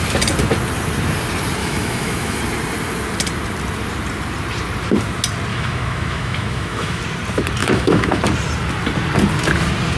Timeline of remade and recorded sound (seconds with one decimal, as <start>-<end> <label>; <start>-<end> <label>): 0.0-1.6 recorded; 1.6-2.4 remade; 2.4-5.5 recorded; 5.5-7.0 remade; 7.0-7.6 recorded; 7.6-8.2 remade; 8.2-10.0 recorded